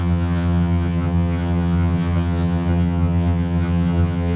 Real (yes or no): no